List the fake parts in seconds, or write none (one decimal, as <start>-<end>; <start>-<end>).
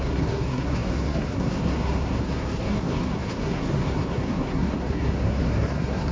0.0-6.1